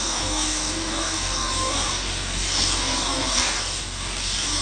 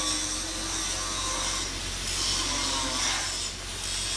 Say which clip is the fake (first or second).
first